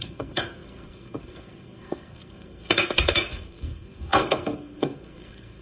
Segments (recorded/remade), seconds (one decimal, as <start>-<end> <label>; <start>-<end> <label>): 0.0-5.6 remade